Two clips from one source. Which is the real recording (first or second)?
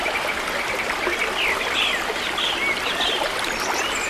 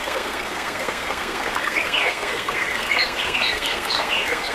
first